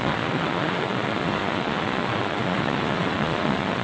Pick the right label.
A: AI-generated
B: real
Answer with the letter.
A